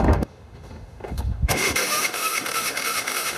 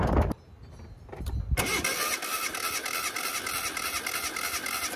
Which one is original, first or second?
second